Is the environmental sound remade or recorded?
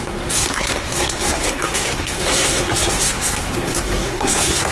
remade